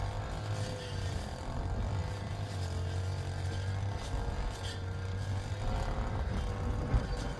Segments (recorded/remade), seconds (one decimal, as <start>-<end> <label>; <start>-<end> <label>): 0.0-7.4 recorded